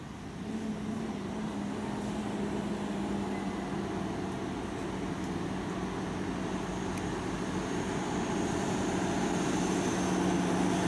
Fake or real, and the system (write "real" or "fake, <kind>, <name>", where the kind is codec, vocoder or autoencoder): real